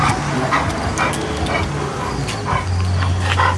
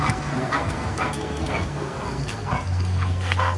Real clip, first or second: first